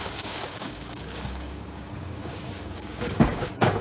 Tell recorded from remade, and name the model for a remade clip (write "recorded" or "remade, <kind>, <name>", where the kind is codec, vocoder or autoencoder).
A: remade, codec, DAC